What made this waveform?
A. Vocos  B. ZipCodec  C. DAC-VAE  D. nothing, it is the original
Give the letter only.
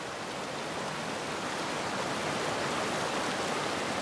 D